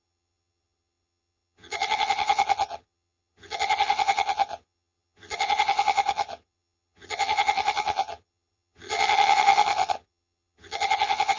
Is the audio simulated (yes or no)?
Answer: yes